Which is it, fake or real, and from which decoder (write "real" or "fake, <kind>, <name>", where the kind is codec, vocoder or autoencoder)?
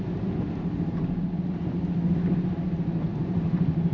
real